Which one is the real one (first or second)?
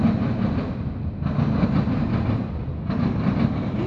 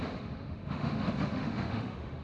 first